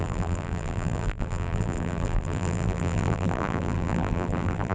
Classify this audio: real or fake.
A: fake